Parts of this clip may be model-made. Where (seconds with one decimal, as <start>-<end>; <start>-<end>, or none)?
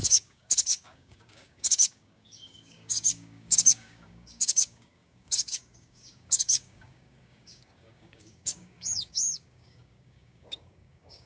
0.0-11.3